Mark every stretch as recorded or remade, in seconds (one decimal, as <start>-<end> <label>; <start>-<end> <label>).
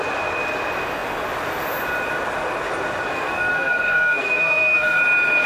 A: 0.0-3.1 recorded; 3.1-5.0 remade; 5.0-5.5 recorded